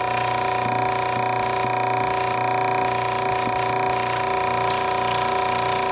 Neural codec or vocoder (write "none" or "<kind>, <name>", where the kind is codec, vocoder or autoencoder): none